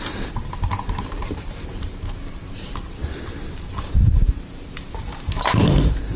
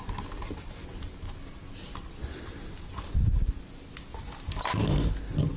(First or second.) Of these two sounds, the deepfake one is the first